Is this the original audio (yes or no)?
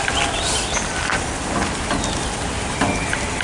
yes